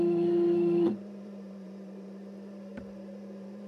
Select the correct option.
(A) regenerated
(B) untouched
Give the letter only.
A